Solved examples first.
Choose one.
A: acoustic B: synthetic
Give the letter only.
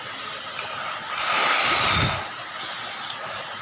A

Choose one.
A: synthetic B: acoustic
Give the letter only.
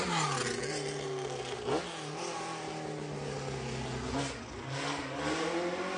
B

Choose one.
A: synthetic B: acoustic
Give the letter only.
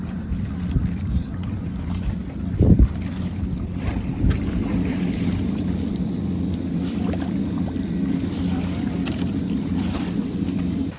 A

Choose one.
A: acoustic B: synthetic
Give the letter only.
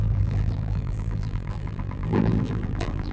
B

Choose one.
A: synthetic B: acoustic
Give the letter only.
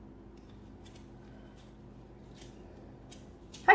B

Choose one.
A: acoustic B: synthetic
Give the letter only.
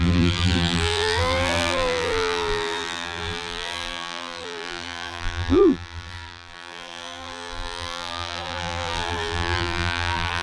B